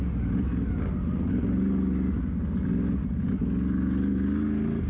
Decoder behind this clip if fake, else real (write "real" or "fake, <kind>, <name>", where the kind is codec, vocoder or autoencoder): real